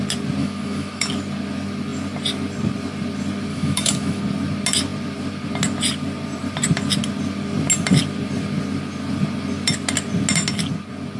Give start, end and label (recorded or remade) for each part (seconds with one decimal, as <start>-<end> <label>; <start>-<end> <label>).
0.0-0.4 recorded; 0.4-1.1 remade; 1.1-3.5 recorded; 3.5-4.2 remade; 4.2-11.2 recorded